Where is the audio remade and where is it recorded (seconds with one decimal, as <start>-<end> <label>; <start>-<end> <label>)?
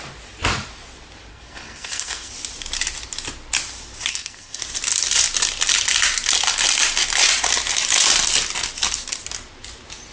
0.0-1.3 recorded; 1.3-2.3 remade; 2.3-4.1 recorded; 4.1-4.6 remade; 4.6-10.1 recorded